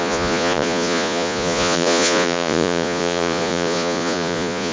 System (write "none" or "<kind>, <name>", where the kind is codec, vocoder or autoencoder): vocoder, Vocos